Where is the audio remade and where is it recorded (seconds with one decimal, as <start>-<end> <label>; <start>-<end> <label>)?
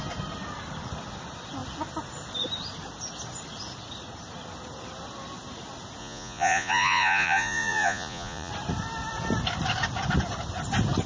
0.0-6.0 recorded; 6.0-8.5 remade; 8.5-11.1 recorded